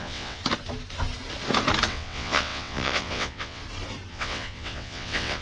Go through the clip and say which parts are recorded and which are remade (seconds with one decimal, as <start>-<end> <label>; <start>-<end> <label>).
0.0-0.4 remade; 0.4-1.9 recorded; 1.9-3.6 remade; 3.6-4.1 recorded; 4.1-5.4 remade